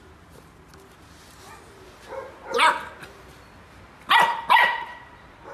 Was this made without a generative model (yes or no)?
yes